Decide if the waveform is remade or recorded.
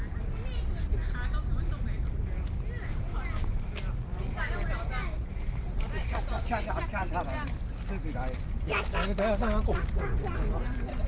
recorded